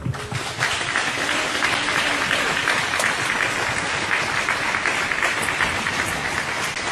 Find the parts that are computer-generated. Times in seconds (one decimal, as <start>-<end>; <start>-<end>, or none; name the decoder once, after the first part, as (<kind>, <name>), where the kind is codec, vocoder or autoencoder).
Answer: none